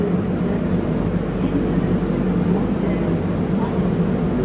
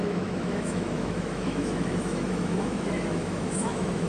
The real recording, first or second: first